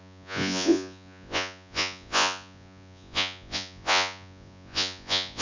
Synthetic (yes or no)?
yes